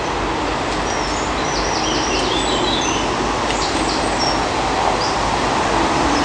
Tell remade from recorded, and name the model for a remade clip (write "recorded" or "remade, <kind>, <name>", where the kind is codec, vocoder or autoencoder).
recorded